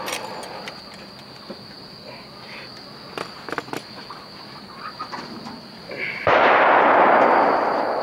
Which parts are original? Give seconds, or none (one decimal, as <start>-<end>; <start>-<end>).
0.0-8.0

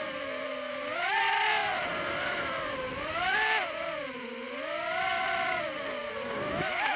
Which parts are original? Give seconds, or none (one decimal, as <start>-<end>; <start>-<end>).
0.0-1.6; 4.5-7.0

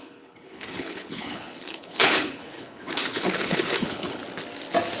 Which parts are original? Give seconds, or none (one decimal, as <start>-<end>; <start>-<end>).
4.2-5.0

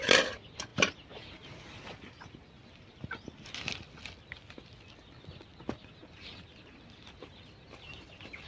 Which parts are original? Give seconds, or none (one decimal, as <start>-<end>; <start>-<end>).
0.0-8.5

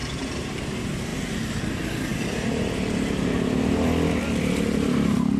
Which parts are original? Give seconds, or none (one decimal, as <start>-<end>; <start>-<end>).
0.7-5.4

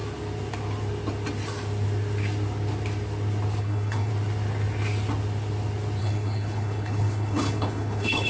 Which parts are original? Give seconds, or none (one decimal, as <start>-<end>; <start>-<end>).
0.0-3.6; 4.1-6.0

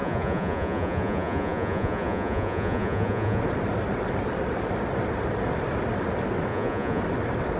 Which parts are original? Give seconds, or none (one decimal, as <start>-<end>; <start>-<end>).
3.4-6.5; 7.0-7.6

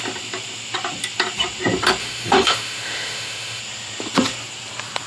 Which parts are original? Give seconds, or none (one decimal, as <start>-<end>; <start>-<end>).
0.0-2.0; 3.6-5.1